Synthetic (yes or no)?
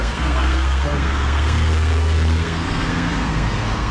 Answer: yes